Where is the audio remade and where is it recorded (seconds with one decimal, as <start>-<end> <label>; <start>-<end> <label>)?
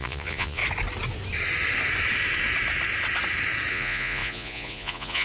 0.0-0.6 remade; 0.6-3.7 recorded; 3.7-5.2 remade